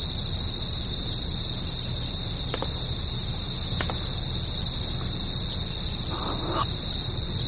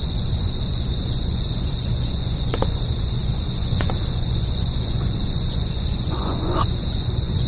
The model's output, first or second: second